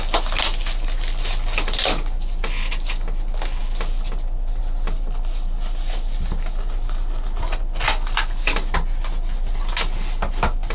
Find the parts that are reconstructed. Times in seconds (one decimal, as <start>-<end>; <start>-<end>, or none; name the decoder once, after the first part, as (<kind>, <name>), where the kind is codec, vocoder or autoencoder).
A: none